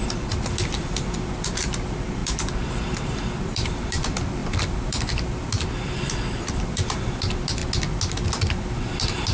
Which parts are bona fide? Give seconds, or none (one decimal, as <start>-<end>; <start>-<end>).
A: 7.6-8.3